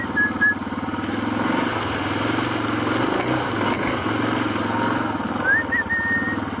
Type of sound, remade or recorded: recorded